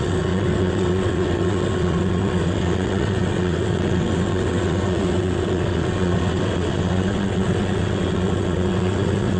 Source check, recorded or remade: remade